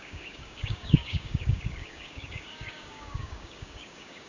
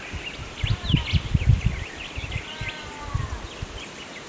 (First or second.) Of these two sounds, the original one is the second